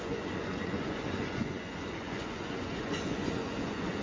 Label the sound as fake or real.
fake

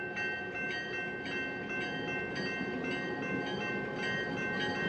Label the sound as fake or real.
real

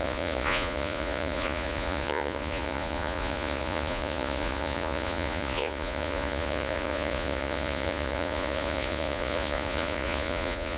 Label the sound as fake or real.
fake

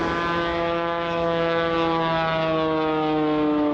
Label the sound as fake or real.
real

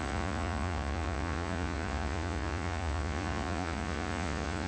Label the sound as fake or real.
fake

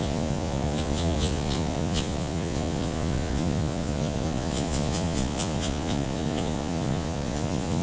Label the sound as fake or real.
fake